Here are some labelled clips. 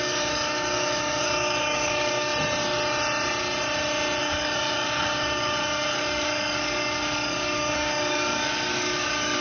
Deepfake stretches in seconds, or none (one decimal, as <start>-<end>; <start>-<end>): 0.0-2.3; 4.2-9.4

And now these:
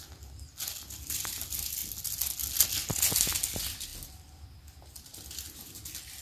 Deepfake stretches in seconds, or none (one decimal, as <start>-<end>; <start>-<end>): 5.1-5.8

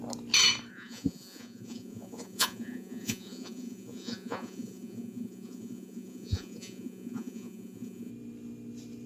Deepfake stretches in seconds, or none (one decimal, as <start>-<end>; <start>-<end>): 0.7-8.1